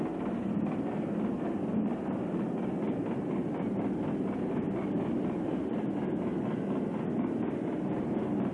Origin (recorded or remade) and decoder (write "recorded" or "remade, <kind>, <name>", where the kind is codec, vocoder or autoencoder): recorded